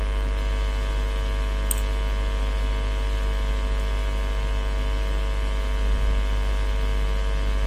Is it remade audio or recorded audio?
recorded